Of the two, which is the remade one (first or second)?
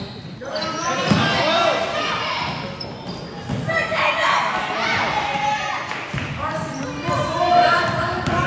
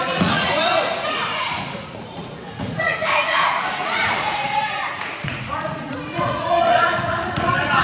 second